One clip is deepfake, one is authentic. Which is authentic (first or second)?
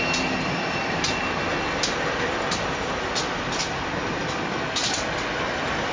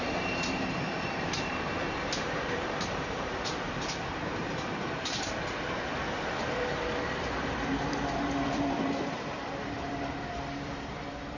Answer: first